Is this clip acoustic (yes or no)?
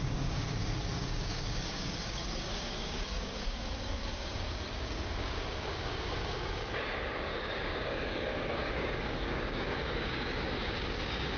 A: no